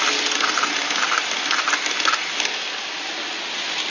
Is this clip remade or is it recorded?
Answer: recorded